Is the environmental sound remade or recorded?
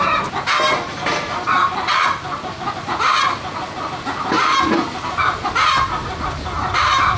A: recorded